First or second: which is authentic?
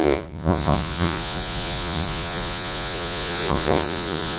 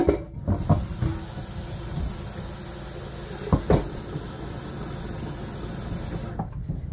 second